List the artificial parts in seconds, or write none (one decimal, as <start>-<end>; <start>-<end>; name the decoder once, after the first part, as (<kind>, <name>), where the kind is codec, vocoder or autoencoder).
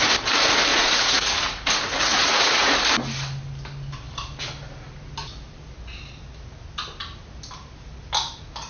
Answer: 0.7-2.7 (vocoder, Vocos)